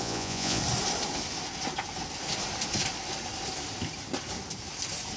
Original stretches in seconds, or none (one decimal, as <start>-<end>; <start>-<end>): 0.6-5.2